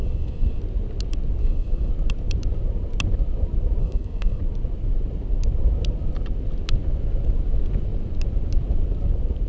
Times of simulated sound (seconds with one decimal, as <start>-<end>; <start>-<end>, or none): 0.0-0.6; 1.4-1.9; 3.8-4.4